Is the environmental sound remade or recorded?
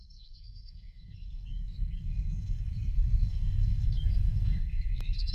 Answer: remade